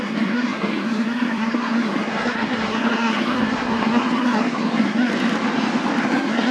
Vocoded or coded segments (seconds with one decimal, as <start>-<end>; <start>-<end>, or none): 0.0-5.1; 6.0-6.5